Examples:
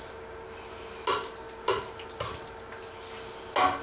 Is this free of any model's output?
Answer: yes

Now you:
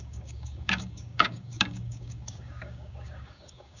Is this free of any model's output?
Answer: no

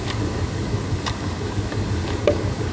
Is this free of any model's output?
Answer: no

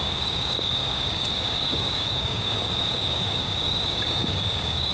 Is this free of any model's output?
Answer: no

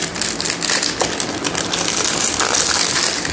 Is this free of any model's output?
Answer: yes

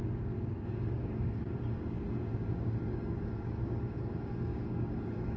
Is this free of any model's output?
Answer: no